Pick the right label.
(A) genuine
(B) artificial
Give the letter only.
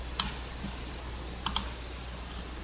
A